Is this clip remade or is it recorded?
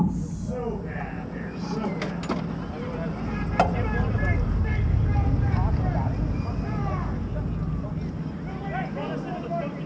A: recorded